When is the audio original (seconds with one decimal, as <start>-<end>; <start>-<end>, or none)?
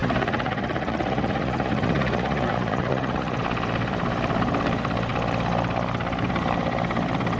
3.4-7.4